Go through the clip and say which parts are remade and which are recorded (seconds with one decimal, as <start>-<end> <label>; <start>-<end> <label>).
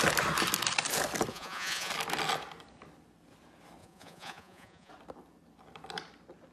0.0-1.3 recorded; 1.3-1.9 remade; 1.9-3.8 recorded; 3.8-4.9 remade; 4.9-6.5 recorded